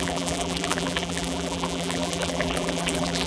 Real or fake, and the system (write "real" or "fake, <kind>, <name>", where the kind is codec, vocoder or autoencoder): fake, vocoder, BigVGAN v2